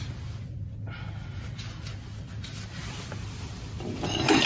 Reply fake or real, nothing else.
real